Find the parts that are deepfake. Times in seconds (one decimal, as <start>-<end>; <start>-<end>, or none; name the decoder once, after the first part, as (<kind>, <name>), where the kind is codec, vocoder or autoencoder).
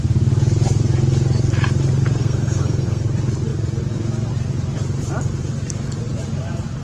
2.2-3.0 (codec, SNAC)